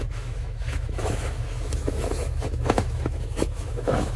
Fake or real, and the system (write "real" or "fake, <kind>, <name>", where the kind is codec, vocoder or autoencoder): fake, autoencoder, DAC-VAE